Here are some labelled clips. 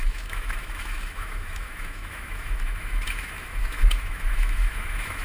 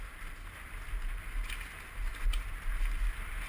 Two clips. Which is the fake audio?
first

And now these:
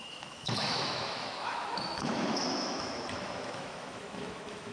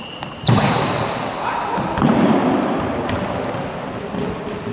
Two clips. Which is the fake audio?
first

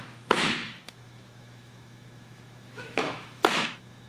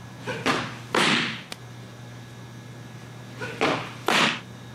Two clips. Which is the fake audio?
first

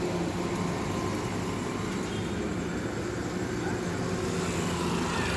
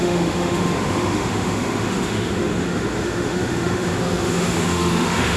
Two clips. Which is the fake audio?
second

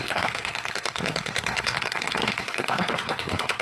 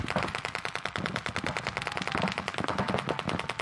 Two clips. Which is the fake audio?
first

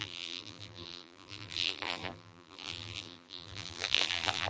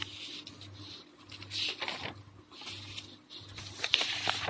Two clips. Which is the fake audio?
first